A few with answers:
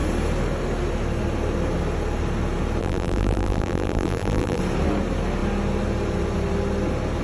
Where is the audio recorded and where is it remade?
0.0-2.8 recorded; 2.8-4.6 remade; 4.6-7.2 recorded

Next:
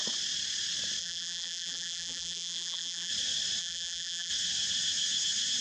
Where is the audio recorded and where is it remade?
0.0-1.0 recorded; 1.0-3.1 remade; 3.1-3.6 recorded; 3.6-4.3 remade; 4.3-5.6 recorded